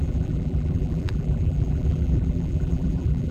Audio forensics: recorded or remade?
remade